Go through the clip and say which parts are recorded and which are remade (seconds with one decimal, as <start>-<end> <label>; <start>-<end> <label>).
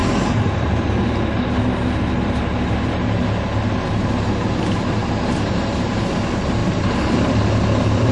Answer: 0.0-6.6 recorded; 6.6-8.1 remade